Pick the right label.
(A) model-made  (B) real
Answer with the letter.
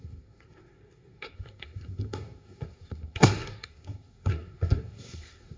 A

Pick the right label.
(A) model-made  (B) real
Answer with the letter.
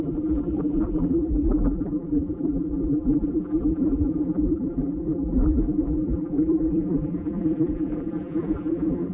A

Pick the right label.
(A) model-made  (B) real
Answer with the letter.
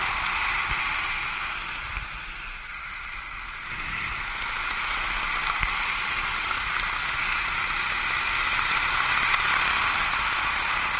B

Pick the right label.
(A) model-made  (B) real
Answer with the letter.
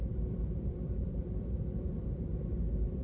A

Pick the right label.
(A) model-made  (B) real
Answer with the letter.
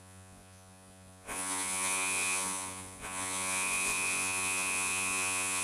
A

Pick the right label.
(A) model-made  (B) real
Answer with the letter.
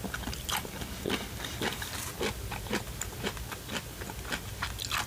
B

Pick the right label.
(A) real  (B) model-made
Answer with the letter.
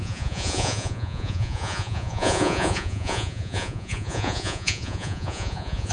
B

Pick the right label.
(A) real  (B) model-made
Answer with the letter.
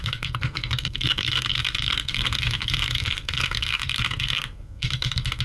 B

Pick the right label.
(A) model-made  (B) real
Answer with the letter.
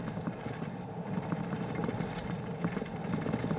A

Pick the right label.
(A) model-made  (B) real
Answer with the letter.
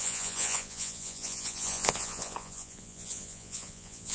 A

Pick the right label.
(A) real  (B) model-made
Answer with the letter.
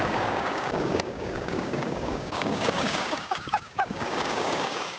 B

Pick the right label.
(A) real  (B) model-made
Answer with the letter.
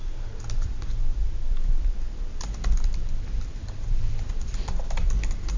B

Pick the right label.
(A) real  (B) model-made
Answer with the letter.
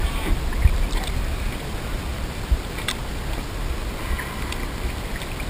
A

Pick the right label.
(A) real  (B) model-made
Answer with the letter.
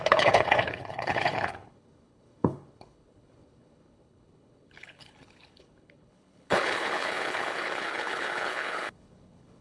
B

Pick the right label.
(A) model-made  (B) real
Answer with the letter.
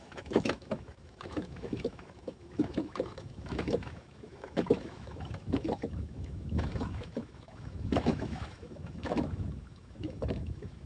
A